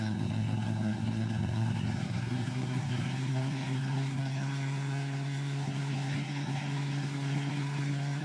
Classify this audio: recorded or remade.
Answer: remade